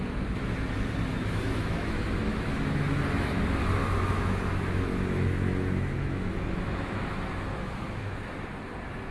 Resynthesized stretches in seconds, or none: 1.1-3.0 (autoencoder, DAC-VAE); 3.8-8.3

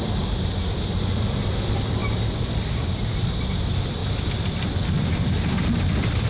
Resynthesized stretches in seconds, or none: 0.0-2.0 (vocoder, BigVGAN v2); 3.6-4.0

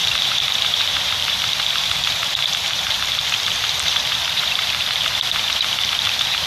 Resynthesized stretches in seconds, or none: 0.0-4.8 (vocoder, BigVGAN v2); 5.5-6.5

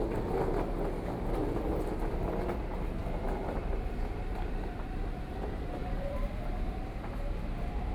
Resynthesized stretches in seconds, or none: 3.0-5.3 (vocoder, BigVGAN v2); 5.8-6.3